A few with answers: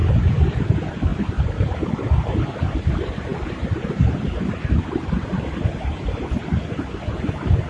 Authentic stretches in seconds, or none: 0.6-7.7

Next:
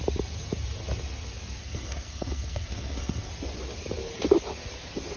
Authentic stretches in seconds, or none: 0.0-1.6; 3.3-5.2

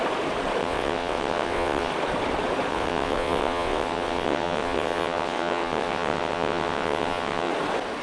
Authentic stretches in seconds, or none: 0.0-0.6; 1.9-2.7; 7.5-8.0

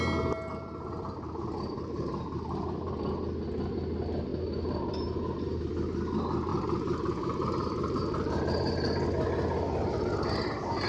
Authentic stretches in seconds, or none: 0.0-0.5; 2.9-4.3; 5.7-6.5; 8.4-10.9

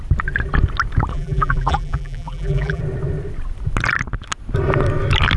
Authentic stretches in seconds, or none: 0.0-1.1; 2.8-5.4

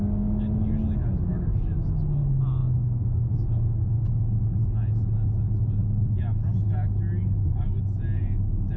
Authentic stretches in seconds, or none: 0.0-1.3; 1.9-2.6; 3.3-8.8